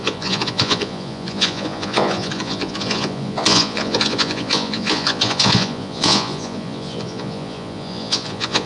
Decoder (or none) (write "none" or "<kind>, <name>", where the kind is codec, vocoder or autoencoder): vocoder, Vocos